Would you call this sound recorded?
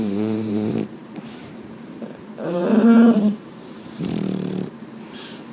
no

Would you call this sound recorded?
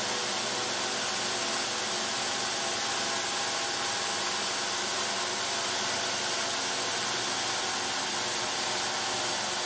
yes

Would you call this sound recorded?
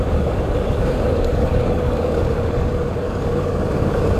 no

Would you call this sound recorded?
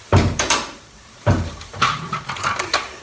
no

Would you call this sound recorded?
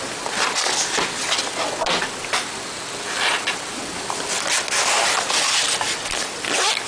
yes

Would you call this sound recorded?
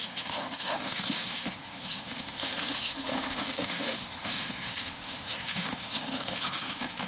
no